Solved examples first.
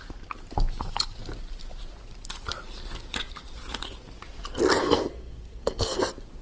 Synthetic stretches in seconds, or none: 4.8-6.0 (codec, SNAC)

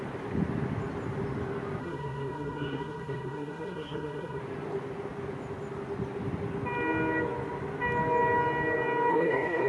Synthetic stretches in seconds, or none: 1.8-4.4 (codec, SNAC); 9.1-9.7

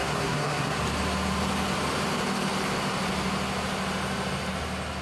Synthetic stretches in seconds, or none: 0.0-0.8 (codec, SNAC)

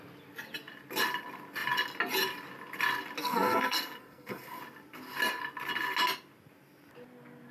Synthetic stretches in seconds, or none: 3.2-4.6 (codec, SNAC)

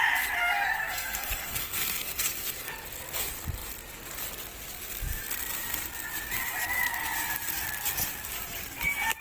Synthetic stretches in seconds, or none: 0.4-2.7 (codec, SNAC)

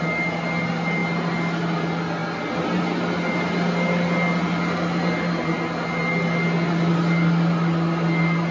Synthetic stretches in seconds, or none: none

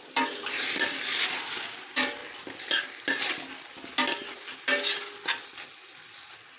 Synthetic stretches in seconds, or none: none